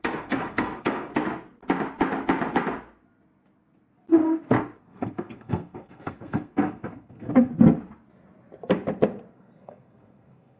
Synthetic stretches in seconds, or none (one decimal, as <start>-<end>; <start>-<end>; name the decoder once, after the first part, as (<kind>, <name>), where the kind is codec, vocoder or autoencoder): 0.0-1.1 (codec, SNAC); 4.8-7.5; 9.3-10.6